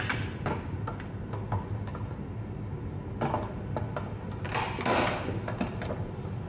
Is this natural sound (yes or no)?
yes